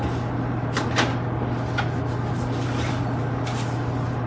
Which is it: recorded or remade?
recorded